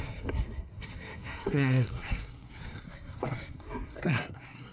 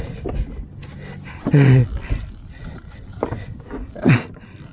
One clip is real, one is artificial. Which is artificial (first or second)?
first